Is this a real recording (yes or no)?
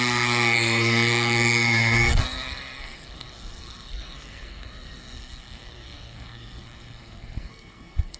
no